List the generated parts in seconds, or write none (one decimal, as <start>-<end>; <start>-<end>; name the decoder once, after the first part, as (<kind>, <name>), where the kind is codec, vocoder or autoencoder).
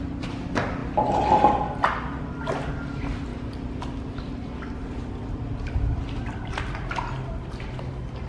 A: 3.3-4.0 (vocoder, BigVGAN v2)